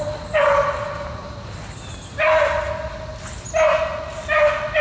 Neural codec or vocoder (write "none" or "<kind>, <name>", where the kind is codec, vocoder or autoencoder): none